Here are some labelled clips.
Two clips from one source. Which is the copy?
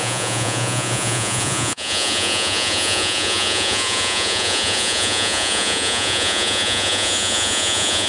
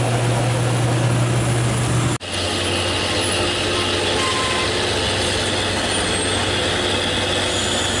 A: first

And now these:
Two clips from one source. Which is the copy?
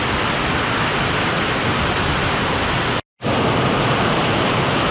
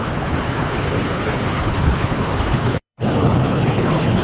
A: second